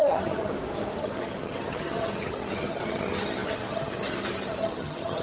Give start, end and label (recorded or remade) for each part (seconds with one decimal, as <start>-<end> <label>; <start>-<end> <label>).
0.0-0.5 remade; 0.5-1.0 recorded; 1.0-5.2 remade